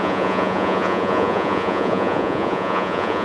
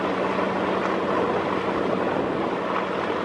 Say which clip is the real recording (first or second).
second